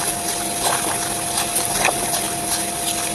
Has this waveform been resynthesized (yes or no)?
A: no